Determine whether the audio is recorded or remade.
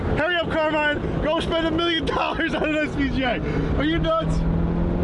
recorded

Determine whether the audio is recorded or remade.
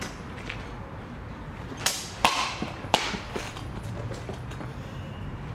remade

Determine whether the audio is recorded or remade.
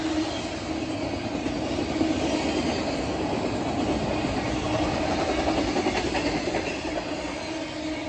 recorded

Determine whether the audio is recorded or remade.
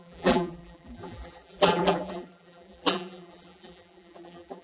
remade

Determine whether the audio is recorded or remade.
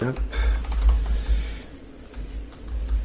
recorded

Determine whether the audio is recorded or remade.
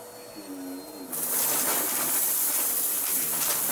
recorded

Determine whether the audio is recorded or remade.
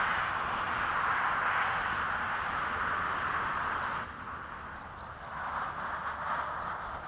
recorded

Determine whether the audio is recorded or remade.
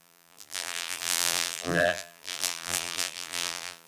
remade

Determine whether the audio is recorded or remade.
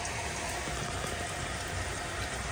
remade